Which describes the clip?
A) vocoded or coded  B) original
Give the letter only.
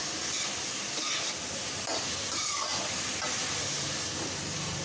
B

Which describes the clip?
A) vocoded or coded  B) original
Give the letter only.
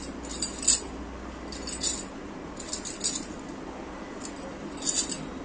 B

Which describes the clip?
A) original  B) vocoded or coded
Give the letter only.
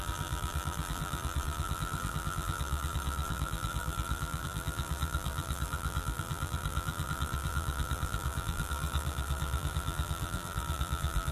B